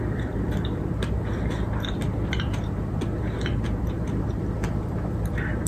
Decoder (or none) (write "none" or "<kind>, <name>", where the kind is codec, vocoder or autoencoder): vocoder, BigVGAN v2